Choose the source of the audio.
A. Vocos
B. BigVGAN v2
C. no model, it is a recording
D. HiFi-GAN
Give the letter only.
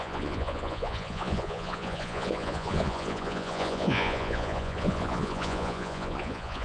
A